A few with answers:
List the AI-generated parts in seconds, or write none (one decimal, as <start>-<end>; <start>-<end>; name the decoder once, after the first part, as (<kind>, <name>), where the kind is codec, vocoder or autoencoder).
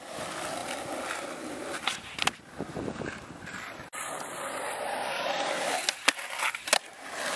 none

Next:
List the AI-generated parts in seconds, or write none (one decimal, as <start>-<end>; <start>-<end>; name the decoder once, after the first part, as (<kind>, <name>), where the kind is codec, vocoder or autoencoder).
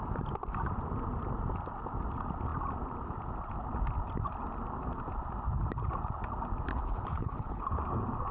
6.7-7.6 (codec, HILCodec)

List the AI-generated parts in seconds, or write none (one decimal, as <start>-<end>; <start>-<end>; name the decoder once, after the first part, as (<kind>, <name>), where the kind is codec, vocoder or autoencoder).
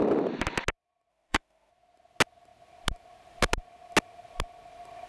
1.1-1.7 (autoencoder, DAC-VAE)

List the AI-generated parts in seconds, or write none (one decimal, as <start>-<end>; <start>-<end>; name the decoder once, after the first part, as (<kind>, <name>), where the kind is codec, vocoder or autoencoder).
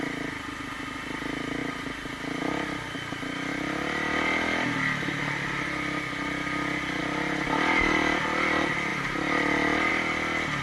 none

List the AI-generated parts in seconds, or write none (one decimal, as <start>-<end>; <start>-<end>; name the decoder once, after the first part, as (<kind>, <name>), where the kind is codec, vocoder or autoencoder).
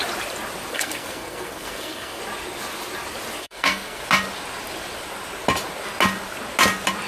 0.7-2.2 (codec, SNAC); 3.4-4.0